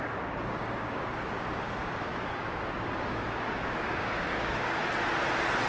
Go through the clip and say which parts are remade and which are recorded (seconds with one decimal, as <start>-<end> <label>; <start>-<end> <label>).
0.0-4.8 remade; 4.8-5.7 recorded